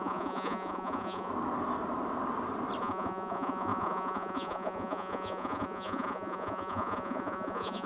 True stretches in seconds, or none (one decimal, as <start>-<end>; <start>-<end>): 1.3-2.8

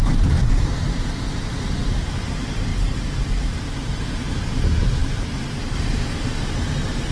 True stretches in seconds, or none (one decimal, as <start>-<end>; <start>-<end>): 0.0-2.7; 4.0-7.1

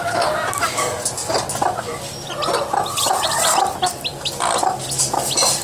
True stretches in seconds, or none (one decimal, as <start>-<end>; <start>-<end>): 0.0-5.6

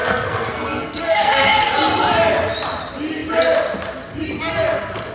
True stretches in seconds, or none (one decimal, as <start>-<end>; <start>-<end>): 1.7-5.1